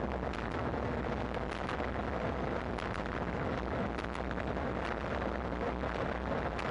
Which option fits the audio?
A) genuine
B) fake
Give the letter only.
A